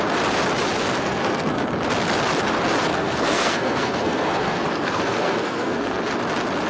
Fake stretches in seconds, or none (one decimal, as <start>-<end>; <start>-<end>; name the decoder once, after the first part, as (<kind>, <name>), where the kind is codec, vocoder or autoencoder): 1.0-1.6 (codec, SNAC); 2.9-6.0